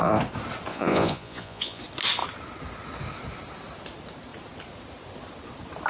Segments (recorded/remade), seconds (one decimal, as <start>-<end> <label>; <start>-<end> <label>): 0.0-0.7 recorded; 0.7-1.8 remade; 1.8-5.9 recorded